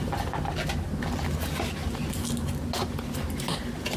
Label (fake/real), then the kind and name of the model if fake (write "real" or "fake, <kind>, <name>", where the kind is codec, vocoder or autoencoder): real